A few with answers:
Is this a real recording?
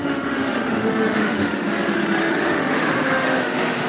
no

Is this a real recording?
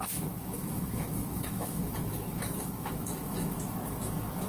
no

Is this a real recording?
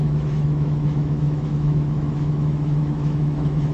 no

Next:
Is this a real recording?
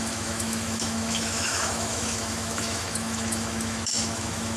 no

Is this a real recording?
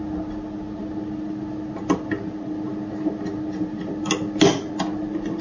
yes